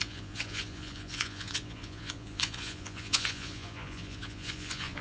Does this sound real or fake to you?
fake